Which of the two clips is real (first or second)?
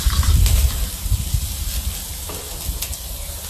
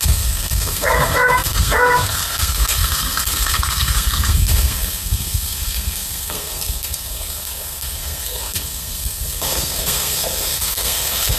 first